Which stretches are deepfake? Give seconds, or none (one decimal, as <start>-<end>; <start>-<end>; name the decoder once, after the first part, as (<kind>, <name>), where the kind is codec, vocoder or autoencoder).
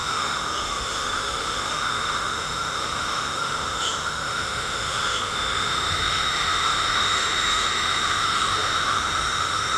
0.0-9.8 (autoencoder, DAC-VAE)